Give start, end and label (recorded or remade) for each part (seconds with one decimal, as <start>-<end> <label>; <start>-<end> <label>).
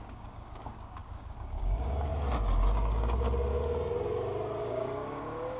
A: 0.0-2.1 remade; 2.1-4.6 recorded; 4.6-5.6 remade